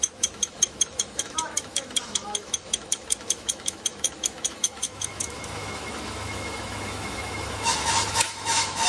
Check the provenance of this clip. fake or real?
fake